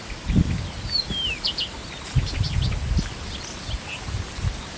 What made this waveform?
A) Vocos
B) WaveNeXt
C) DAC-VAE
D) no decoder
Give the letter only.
D